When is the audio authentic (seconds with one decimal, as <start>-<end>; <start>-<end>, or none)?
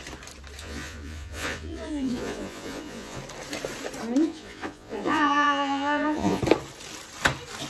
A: 0.0-0.6; 3.2-4.2; 6.4-7.7